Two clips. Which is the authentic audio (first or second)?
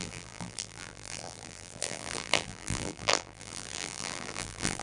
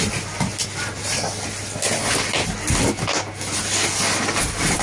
second